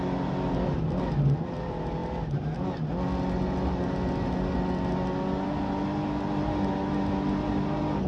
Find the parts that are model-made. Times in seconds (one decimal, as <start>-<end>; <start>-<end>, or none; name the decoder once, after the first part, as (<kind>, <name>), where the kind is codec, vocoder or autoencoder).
none

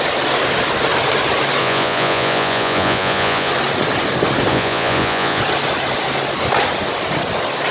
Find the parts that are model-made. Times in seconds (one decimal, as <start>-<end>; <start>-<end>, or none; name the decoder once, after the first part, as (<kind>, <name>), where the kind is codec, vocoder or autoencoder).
1.6-3.5 (vocoder, Vocos); 4.5-5.4

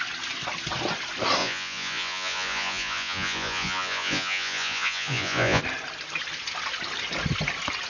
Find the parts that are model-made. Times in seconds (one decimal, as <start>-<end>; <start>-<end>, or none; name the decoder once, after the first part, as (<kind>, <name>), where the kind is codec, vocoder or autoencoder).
1.4-5.6 (vocoder, Vocos)